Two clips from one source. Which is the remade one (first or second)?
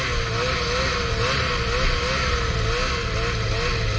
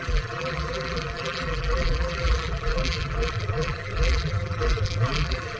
second